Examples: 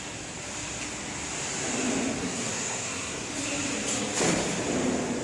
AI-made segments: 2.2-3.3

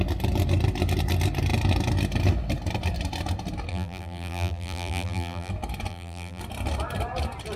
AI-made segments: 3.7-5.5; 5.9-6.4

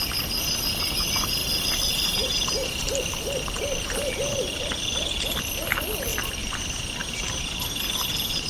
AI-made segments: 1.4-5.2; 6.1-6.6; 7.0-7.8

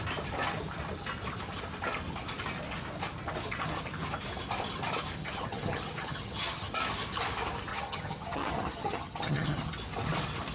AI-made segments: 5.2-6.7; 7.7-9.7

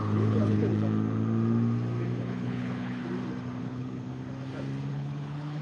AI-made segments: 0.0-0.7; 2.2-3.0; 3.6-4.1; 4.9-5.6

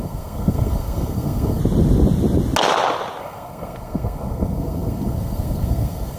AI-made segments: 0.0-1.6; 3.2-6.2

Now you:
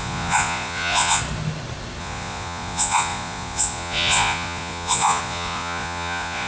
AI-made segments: 0.0-1.2; 2.0-6.5

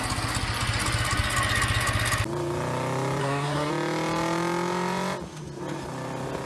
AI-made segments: 3.2-3.7